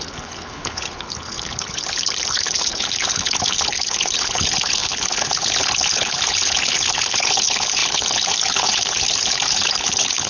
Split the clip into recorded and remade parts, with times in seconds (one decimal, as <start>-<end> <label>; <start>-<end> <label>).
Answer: 0.0-10.3 remade